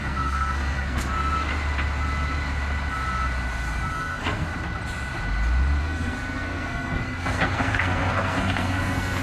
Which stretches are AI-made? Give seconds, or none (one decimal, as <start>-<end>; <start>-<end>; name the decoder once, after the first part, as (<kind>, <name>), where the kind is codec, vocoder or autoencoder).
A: 0.0-1.5 (codec, SNAC); 3.9-4.5; 5.8-9.2